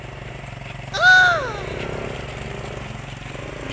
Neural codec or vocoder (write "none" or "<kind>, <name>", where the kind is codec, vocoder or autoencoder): none